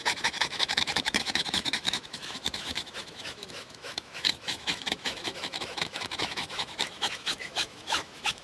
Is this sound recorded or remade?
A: remade